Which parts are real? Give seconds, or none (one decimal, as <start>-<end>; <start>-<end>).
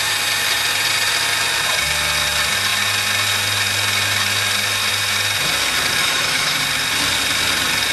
0.0-6.0; 6.6-7.9